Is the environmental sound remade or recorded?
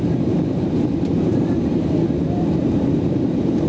remade